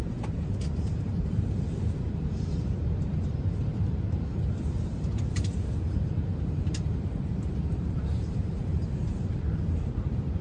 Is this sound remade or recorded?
remade